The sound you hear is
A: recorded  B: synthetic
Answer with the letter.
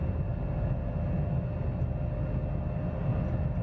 A